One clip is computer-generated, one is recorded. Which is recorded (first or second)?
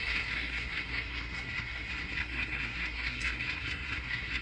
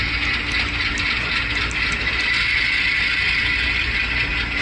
second